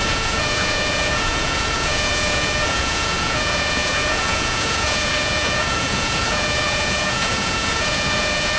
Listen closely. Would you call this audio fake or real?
fake